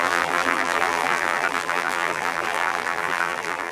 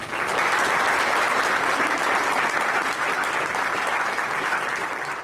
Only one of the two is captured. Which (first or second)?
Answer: second